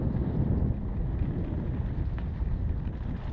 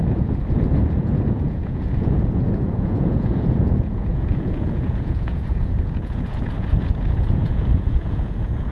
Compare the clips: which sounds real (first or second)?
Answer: first